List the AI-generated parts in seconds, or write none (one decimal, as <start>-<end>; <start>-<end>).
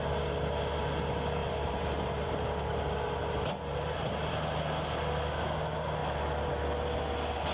1.4-4.3